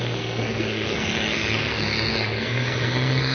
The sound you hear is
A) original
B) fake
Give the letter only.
B